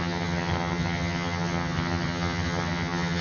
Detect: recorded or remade remade